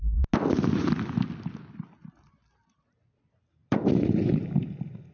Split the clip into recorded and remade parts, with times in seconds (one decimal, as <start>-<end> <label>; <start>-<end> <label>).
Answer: 0.0-5.1 recorded